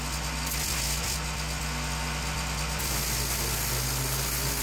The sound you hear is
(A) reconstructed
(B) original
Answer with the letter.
B